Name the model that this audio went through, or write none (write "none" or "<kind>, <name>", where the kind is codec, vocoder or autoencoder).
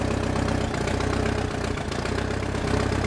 none